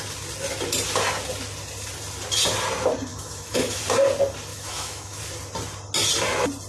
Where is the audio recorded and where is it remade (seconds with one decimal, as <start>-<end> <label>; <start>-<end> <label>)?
0.0-3.1 recorded; 3.1-3.8 remade; 3.8-4.5 recorded; 4.5-5.2 remade; 5.2-6.7 recorded